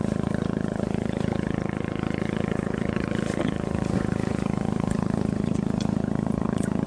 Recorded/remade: remade